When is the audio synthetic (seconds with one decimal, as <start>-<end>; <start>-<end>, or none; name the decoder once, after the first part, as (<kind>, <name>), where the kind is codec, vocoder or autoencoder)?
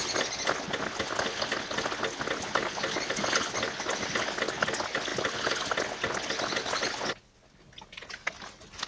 none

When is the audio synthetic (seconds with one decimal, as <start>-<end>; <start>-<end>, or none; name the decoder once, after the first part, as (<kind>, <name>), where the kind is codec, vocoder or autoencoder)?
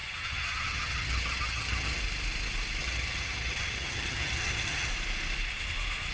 0.0-2.0 (vocoder, HiFi-GAN); 2.8-4.9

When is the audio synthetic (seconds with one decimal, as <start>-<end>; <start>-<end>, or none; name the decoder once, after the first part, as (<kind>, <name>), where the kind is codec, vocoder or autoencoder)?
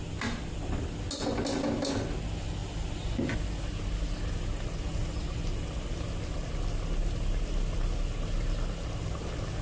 none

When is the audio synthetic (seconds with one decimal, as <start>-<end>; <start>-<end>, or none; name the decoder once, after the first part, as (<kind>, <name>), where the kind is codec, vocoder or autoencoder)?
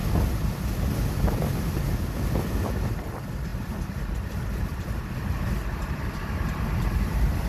none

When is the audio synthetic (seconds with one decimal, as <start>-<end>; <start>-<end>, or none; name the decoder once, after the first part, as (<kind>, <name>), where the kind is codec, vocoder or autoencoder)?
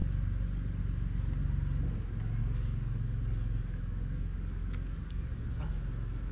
2.4-5.6 (codec, DAC)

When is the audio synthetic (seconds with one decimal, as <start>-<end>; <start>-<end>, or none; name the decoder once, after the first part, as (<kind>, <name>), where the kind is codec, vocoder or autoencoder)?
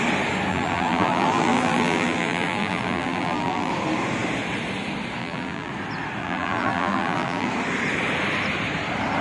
0.5-3.7 (vocoder, BigVGAN v2); 5.2-5.7; 6.2-7.5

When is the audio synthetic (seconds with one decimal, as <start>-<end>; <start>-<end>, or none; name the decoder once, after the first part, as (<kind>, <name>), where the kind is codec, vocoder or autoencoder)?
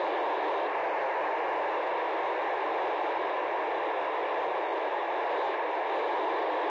none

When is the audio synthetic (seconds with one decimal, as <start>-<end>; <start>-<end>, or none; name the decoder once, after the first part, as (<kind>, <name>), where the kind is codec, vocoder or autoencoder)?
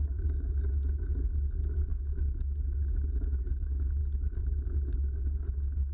1.9-3.4 (autoencoder, DAC-VAE); 4.0-5.2